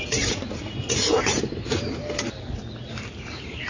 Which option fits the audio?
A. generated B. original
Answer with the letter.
B